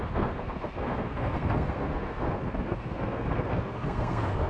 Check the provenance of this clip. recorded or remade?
remade